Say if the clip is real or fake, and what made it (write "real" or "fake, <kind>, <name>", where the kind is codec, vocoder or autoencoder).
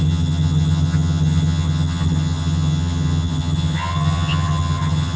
fake, vocoder, HiFi-GAN